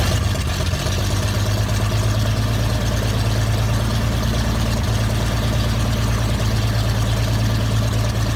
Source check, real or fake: real